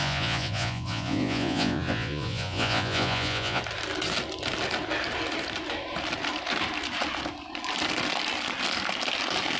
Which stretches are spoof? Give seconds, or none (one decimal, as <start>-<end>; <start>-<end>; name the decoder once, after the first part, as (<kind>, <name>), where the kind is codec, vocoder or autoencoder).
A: 0.0-3.6 (vocoder, Vocos)